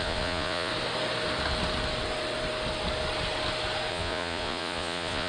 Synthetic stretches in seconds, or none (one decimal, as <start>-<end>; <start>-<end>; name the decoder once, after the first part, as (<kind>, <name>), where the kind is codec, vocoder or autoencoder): 0.0-0.7 (vocoder, Vocos); 3.9-5.3